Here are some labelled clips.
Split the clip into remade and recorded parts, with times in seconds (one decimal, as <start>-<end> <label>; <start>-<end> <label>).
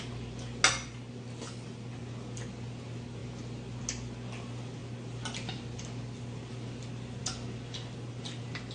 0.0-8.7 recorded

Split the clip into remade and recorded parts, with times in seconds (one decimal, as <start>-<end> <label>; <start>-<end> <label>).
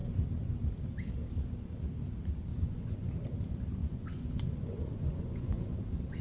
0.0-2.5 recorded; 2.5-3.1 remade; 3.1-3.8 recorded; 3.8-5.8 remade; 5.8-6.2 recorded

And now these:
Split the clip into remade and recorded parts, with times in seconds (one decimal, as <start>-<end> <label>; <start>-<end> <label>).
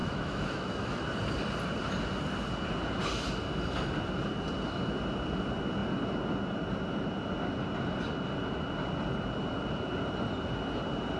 0.0-1.0 remade; 1.0-11.2 recorded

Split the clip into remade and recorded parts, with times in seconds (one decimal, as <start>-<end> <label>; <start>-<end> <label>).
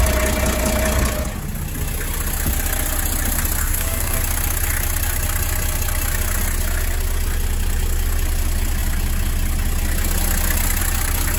0.0-3.6 recorded; 3.6-4.2 remade; 4.2-11.4 recorded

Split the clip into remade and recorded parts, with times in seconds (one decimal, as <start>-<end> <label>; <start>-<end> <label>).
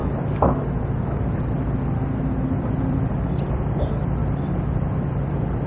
0.0-2.6 recorded; 2.6-4.0 remade; 4.0-5.3 recorded; 5.3-5.7 remade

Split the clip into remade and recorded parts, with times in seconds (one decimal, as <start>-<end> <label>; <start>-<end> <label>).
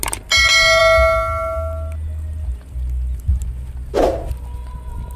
0.0-5.2 recorded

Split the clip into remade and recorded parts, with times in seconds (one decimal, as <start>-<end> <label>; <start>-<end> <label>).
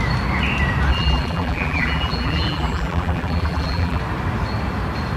0.0-0.9 recorded; 0.9-4.0 remade; 4.0-5.2 recorded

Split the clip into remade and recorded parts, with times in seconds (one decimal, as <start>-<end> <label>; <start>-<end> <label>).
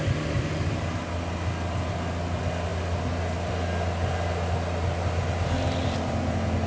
0.0-6.7 recorded